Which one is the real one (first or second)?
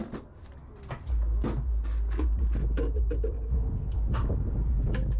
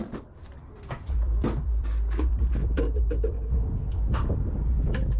first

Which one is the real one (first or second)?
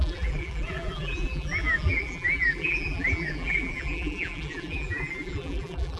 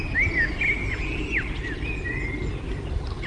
second